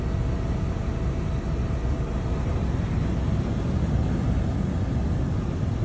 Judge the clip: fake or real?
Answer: real